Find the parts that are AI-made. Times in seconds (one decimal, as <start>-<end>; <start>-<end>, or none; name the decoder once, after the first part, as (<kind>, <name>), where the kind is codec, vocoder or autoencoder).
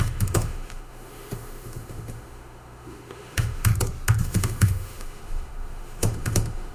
0.0-3.7 (autoencoder, DAC-VAE); 4.2-6.7